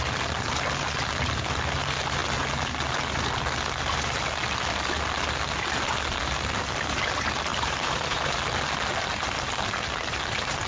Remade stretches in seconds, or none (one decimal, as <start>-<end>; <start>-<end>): 7.5-8.3